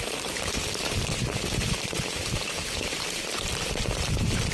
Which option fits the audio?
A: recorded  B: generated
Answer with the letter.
B